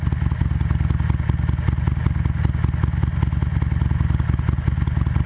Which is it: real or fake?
real